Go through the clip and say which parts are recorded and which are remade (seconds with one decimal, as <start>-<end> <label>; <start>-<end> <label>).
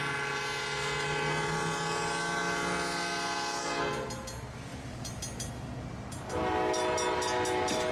0.0-7.9 recorded